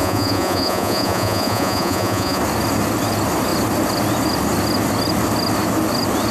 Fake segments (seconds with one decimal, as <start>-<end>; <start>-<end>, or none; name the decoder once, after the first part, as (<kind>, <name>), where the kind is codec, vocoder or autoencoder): 0.0-2.4 (vocoder, Vocos)